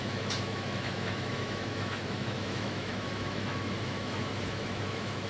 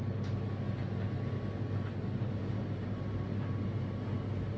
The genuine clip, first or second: second